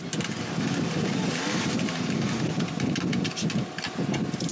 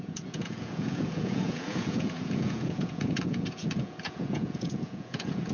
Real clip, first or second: first